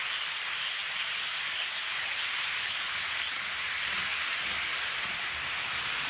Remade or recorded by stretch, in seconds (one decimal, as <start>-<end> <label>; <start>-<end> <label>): 0.0-6.1 recorded